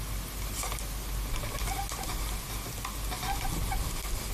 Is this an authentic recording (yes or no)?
yes